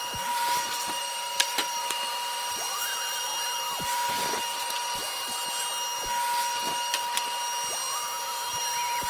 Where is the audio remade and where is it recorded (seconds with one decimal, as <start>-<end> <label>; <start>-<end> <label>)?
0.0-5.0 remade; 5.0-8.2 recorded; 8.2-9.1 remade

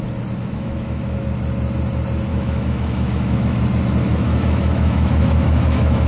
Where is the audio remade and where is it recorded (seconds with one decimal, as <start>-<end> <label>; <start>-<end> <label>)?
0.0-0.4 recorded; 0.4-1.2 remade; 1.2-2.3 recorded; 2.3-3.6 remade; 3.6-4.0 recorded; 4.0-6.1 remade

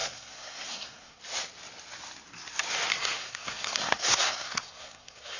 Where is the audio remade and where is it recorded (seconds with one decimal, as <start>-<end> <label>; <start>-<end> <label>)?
0.0-1.2 remade; 1.2-2.9 recorded; 2.9-5.4 remade

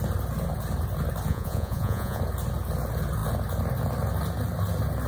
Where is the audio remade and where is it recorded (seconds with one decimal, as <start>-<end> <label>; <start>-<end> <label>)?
0.0-1.3 recorded; 1.3-2.2 remade; 2.2-5.1 recorded